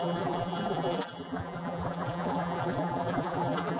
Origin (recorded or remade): remade